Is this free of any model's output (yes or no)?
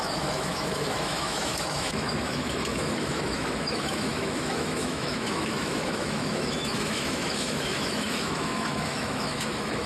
no